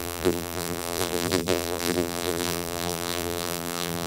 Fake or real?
fake